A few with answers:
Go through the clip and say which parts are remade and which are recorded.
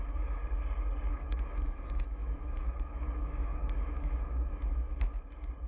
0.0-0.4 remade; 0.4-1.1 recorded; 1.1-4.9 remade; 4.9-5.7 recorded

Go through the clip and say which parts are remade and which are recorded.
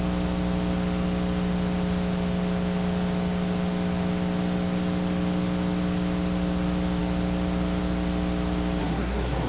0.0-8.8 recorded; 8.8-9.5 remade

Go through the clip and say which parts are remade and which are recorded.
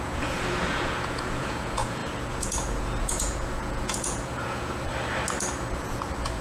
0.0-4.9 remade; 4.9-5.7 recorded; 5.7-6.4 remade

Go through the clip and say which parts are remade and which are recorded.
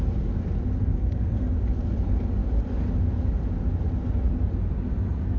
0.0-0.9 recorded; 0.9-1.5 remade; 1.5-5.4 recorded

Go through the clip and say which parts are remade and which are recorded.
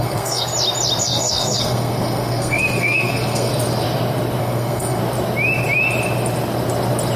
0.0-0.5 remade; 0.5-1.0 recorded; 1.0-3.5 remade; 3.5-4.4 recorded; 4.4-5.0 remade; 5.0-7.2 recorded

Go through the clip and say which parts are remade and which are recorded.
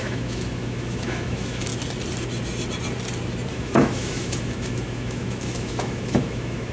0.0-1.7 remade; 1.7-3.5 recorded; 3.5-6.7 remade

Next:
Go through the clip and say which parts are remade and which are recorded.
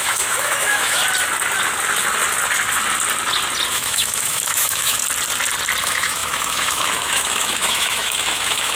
0.0-1.0 remade; 1.0-3.7 recorded; 3.7-5.0 remade; 5.0-5.8 recorded; 5.8-8.8 remade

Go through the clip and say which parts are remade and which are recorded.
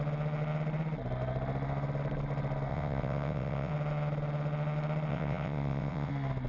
0.0-2.7 recorded; 2.7-3.7 remade; 3.7-5.1 recorded; 5.1-6.1 remade; 6.1-6.5 recorded